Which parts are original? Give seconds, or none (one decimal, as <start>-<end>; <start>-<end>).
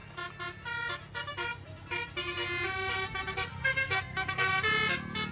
0.0-3.5; 4.5-5.3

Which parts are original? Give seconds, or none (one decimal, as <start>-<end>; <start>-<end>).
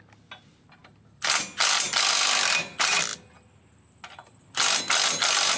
0.0-5.6